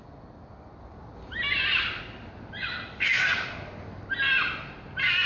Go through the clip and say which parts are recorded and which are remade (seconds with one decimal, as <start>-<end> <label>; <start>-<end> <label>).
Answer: 0.0-5.3 recorded